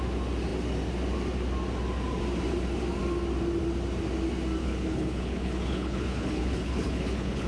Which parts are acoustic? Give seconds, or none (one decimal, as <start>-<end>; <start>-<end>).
0.0-4.6